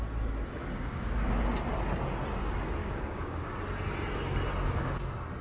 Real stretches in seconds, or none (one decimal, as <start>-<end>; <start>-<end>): 0.0-0.6; 1.3-2.8; 3.5-5.4